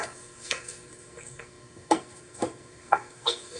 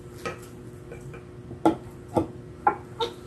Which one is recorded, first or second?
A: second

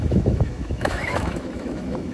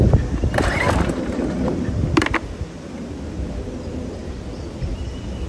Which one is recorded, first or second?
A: second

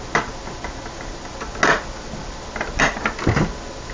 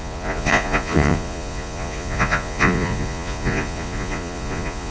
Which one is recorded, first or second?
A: first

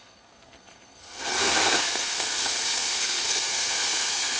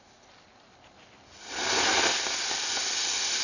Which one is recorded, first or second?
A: second